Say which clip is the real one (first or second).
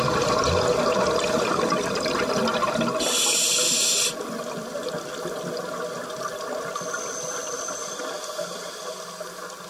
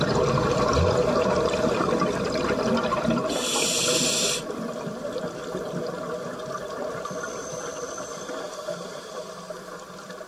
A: first